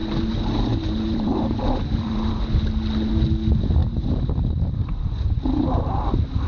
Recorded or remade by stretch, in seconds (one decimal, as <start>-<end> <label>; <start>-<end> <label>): 0.0-2.3 remade; 2.3-3.8 recorded; 3.8-5.4 remade; 5.4-6.5 recorded